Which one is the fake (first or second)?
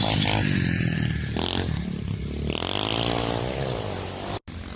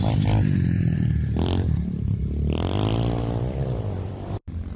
second